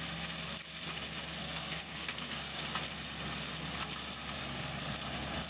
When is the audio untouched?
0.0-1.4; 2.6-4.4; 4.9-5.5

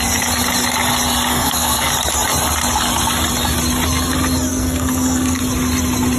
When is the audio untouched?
0.0-1.3; 1.9-4.5; 5.4-6.2

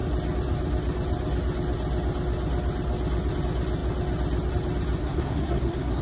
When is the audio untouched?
0.0-5.0

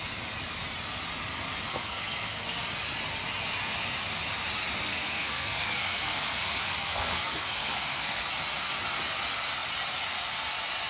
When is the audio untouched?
0.0-1.7; 2.6-4.9; 8.3-10.9

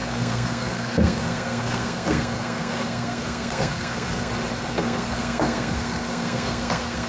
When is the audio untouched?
4.3-4.7

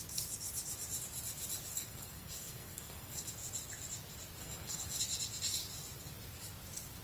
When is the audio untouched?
0.0-1.7; 3.3-4.4; 5.0-7.0

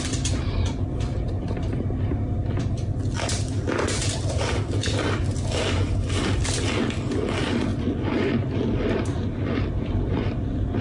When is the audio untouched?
0.0-10.8

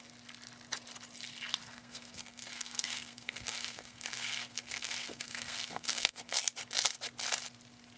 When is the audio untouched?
0.0-1.6; 6.4-8.0